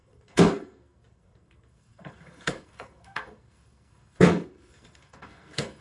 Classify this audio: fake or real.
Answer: fake